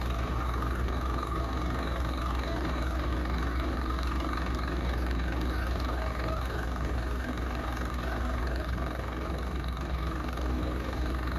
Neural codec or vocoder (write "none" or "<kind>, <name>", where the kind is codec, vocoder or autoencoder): codec, DAC